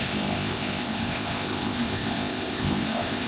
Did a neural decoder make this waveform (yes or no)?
yes